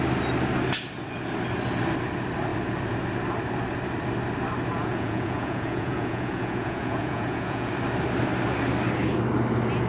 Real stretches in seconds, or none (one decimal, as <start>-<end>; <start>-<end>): 0.0-4.7; 7.7-9.9